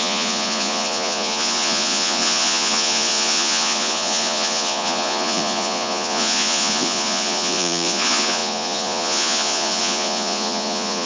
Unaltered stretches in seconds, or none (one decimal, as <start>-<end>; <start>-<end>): none